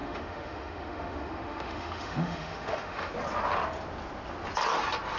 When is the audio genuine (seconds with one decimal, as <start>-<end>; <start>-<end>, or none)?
3.1-5.2